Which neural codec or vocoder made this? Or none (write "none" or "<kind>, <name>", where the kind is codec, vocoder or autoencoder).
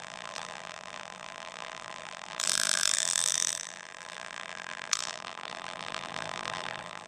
vocoder, BigVGAN v2